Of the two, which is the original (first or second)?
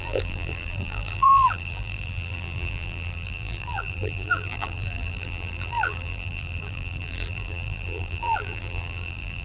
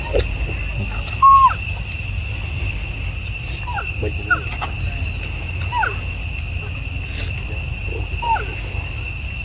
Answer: second